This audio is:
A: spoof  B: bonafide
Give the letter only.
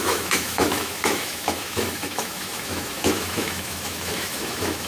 A